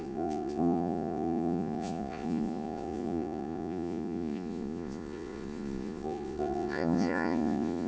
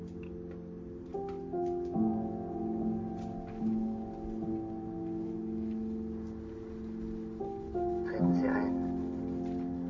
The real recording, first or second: second